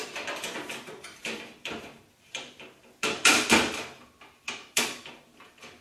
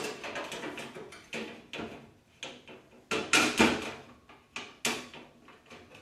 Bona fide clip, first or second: second